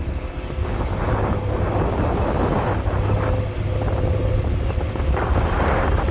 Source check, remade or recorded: recorded